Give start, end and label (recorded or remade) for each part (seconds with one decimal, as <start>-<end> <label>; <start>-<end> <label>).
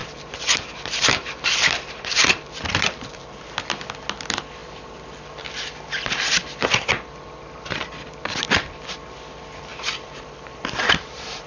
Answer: 0.0-3.6 remade; 3.6-9.7 recorded; 9.7-11.5 remade